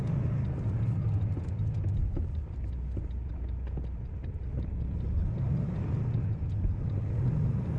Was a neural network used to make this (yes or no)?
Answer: no